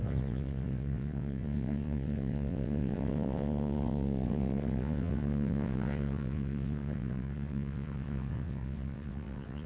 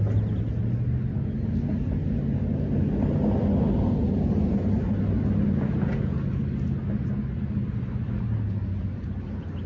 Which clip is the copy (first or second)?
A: first